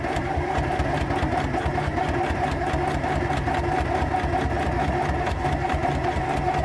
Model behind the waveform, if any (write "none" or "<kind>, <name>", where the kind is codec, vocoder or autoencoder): none